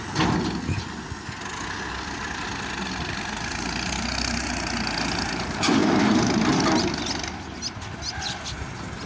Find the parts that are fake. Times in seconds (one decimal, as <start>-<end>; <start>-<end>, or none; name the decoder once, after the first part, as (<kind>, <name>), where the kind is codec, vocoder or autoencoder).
5.8-6.9 (vocoder, BigVGAN v2)